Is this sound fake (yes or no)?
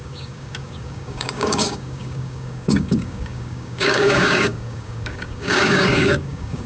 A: yes